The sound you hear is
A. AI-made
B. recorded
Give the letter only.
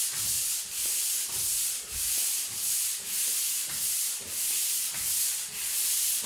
A